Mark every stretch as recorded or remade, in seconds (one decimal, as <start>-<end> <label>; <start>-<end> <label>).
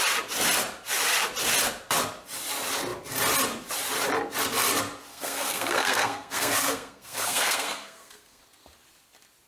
0.0-5.1 recorded; 5.1-8.4 remade; 8.4-9.5 recorded